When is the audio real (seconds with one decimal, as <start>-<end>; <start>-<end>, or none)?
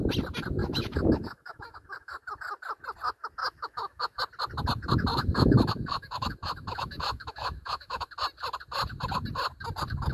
0.0-0.6; 2.2-3.4; 4.2-5.1; 8.1-10.1